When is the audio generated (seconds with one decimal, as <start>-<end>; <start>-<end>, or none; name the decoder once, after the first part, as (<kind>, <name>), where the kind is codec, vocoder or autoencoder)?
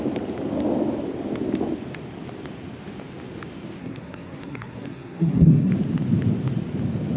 3.8-5.7 (codec, SNAC)